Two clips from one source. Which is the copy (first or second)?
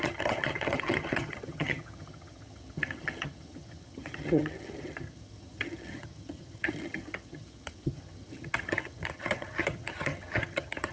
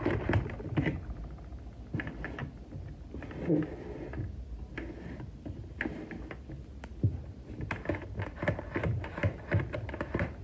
first